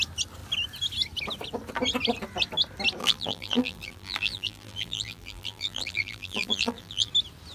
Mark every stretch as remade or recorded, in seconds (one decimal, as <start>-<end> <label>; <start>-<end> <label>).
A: 0.0-3.0 recorded; 3.0-7.1 remade; 7.1-7.5 recorded